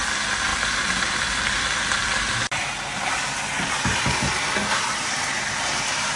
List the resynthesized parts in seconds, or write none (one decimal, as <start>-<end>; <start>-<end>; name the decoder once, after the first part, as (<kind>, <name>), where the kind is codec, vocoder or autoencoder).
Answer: none